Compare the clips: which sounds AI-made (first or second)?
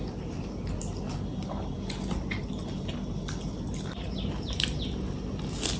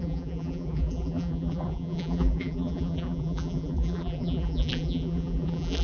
second